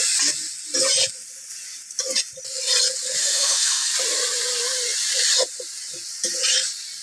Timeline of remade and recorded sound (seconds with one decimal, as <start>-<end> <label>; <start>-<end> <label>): 0.0-3.2 recorded; 3.2-3.9 remade; 3.9-7.0 recorded